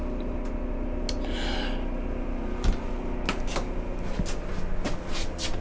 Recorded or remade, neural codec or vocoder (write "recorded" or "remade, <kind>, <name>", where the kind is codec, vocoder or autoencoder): recorded